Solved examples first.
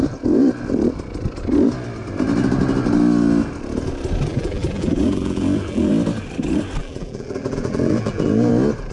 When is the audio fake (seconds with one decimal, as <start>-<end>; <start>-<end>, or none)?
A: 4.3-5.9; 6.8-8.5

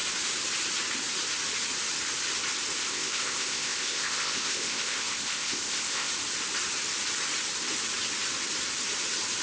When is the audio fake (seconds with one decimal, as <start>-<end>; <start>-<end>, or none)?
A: 2.8-6.1

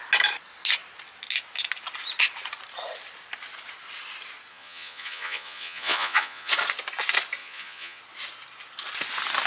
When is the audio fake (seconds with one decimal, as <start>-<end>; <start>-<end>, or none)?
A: 4.5-6.5; 7.4-8.0

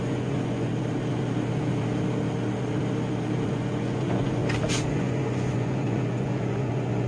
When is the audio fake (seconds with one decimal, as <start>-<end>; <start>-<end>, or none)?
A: 0.0-0.7; 3.5-4.4; 4.9-7.1

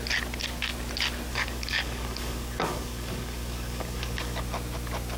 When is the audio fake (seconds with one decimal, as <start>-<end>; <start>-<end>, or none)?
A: 1.3-4.4

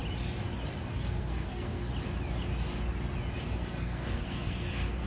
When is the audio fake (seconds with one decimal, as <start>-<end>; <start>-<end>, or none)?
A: 0.9-1.9; 3.4-5.1

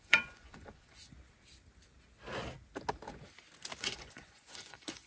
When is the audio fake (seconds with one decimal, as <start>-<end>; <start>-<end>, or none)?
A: 0.0-1.1; 3.8-5.1

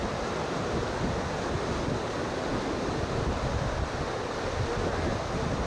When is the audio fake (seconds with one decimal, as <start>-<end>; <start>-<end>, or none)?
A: none